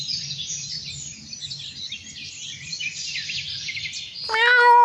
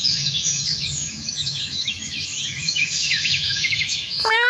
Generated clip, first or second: second